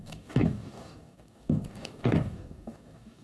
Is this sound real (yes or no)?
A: no